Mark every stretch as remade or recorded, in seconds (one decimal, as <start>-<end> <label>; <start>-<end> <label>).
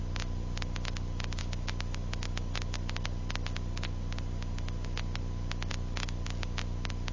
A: 0.0-7.1 recorded